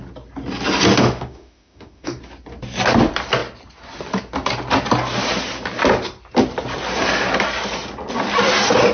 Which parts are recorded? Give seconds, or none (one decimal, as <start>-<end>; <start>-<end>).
0.0-0.9; 2.2-8.9